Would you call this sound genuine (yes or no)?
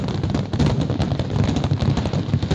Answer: yes